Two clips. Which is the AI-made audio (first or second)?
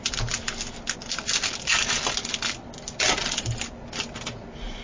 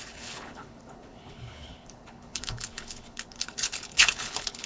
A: second